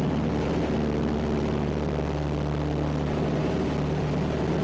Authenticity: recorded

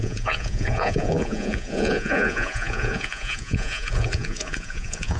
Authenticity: remade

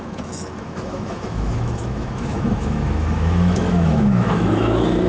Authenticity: remade